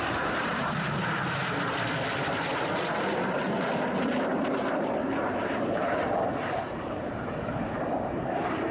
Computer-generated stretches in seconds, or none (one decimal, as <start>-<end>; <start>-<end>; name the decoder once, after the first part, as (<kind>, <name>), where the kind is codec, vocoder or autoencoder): 0.0-1.4 (vocoder, BigVGAN v2); 2.2-8.7